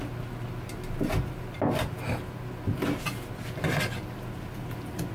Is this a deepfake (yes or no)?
no